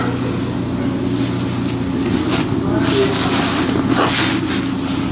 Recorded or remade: recorded